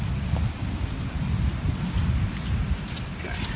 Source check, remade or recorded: recorded